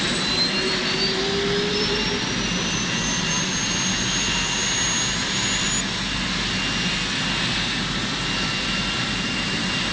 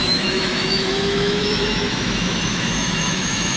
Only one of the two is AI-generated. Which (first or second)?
second